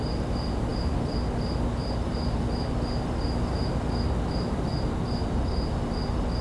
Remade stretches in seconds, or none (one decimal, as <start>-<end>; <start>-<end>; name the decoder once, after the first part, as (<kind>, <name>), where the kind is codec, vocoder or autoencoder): none